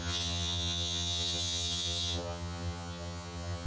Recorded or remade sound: remade